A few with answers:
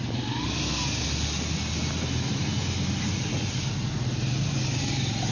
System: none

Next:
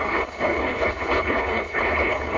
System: codec, HILCodec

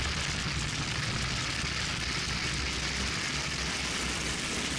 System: none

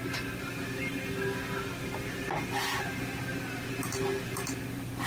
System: none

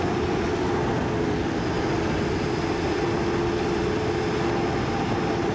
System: none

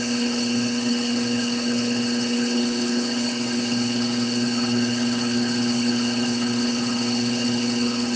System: codec, HILCodec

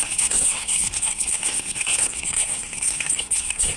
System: codec, SNAC